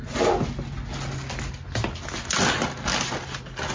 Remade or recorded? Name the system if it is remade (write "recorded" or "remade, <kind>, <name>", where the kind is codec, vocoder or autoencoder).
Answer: recorded